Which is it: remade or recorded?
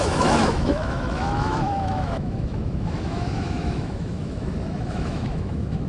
remade